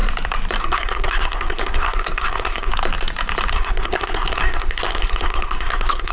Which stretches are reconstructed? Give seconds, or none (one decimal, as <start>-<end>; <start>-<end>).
0.6-2.7; 3.5-6.1